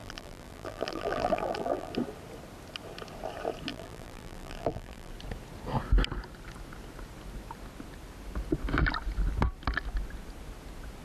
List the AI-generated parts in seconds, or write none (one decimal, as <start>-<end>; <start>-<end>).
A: 0.0-1.9; 3.7-5.1